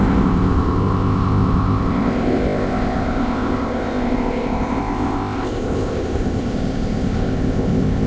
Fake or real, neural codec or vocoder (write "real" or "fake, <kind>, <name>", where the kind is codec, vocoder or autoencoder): fake, codec, ZipCodec